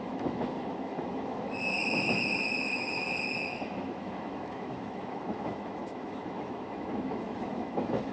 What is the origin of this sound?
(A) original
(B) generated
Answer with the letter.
B